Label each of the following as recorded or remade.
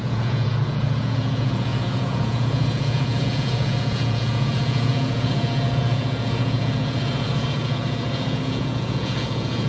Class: remade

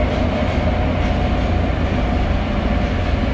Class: recorded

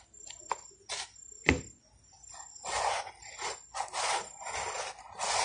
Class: recorded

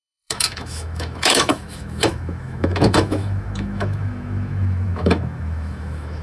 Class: remade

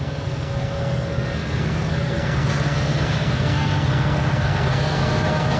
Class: remade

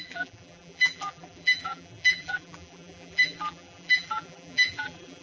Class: remade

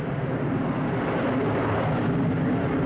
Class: recorded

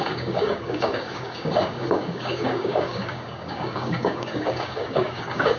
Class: remade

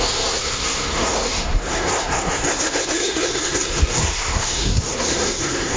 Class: remade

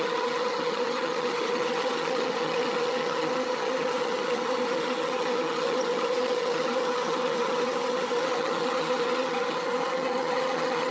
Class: remade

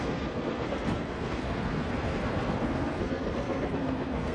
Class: remade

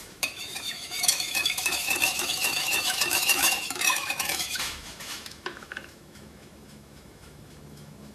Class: remade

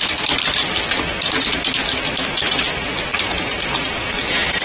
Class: remade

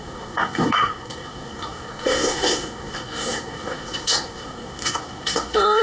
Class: remade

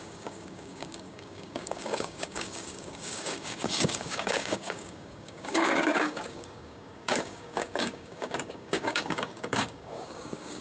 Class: remade